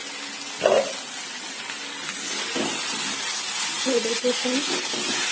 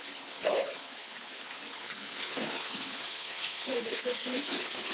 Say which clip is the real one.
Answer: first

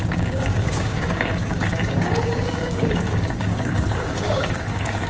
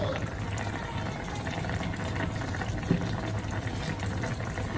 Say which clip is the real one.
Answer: second